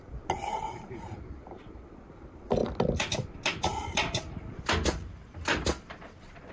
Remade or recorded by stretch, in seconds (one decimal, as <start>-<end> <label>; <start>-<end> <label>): 0.0-0.4 recorded; 0.4-1.1 remade; 1.1-6.5 recorded